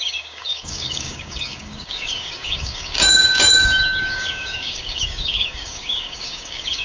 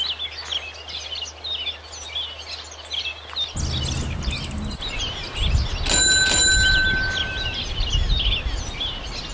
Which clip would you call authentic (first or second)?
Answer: second